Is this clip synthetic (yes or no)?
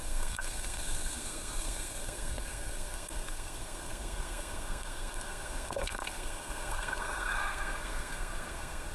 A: yes